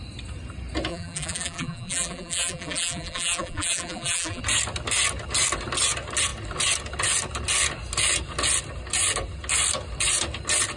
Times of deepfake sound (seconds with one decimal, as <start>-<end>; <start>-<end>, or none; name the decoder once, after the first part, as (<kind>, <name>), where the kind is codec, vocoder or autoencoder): 0.9-4.4 (vocoder, BigVGAN v2)